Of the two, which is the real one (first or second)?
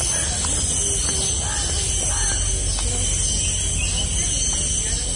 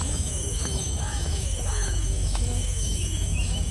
first